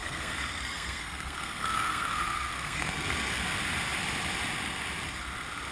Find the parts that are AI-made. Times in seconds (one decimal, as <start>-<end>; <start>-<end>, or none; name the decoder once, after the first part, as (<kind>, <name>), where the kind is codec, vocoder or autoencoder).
0.0-3.4 (codec, SNAC)